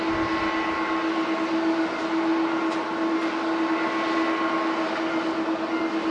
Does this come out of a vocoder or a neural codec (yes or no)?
no